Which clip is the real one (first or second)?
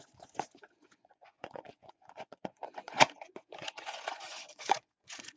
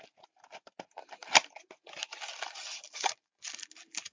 second